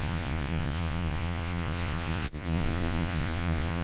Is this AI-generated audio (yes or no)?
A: yes